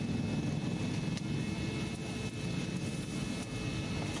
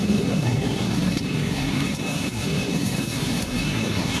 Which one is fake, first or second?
second